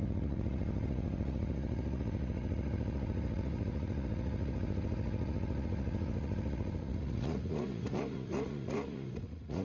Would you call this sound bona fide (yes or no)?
no